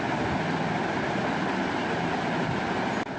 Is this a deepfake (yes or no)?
no